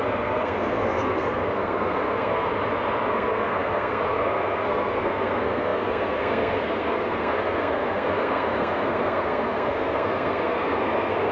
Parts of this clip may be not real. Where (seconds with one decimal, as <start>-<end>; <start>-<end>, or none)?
0.0-2.5; 3.1-11.3